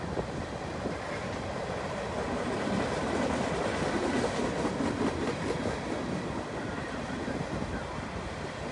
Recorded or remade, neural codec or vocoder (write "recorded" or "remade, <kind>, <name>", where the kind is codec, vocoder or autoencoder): recorded